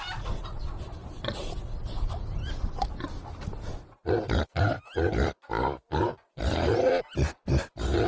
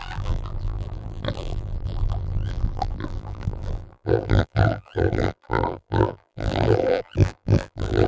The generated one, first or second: second